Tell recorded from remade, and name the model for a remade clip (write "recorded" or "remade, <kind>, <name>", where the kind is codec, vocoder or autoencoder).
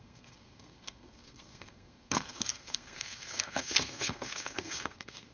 remade, codec, SNAC